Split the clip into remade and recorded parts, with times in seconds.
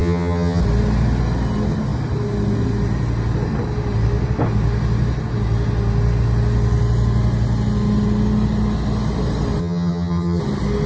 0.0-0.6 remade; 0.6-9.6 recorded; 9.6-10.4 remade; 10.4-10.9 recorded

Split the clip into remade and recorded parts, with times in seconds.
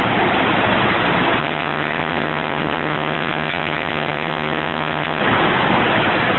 0.0-1.4 recorded; 1.4-5.2 remade; 5.2-6.4 recorded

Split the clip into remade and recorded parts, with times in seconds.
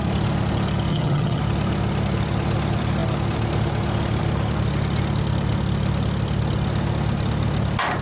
0.0-0.9 recorded; 0.9-1.4 remade; 1.4-8.0 recorded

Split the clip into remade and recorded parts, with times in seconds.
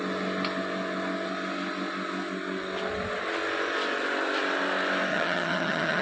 0.0-5.1 recorded; 5.1-6.0 remade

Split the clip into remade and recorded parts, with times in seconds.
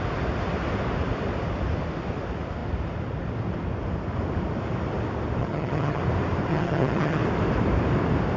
0.0-5.4 recorded; 5.4-6.0 remade; 6.0-6.5 recorded; 6.5-7.2 remade; 7.2-8.4 recorded